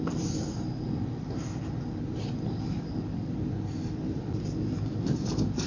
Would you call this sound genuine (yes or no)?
no